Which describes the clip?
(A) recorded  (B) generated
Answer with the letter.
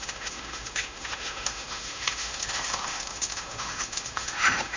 B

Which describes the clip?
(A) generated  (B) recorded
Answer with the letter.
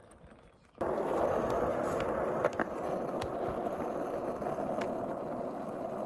B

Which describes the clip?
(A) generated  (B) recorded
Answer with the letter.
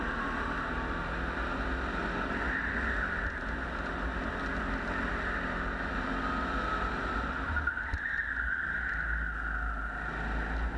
B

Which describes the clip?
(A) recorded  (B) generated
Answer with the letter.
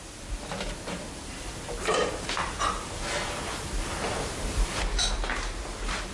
A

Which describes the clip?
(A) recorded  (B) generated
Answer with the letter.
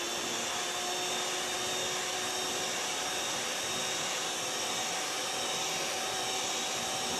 A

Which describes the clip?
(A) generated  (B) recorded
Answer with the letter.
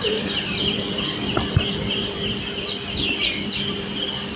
B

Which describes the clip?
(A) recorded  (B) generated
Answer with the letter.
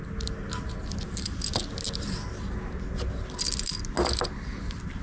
A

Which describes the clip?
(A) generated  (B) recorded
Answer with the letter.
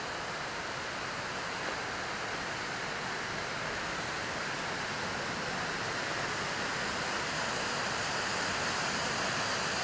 B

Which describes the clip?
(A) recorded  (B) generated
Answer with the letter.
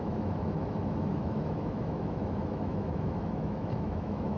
B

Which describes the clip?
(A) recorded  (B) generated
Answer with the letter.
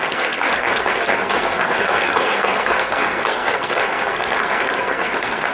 B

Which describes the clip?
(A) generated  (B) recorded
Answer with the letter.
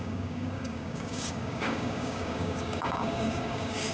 A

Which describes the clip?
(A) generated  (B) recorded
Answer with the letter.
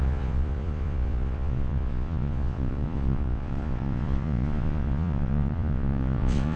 A